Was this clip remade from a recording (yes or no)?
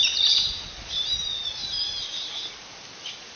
no